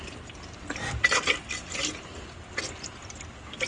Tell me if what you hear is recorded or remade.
recorded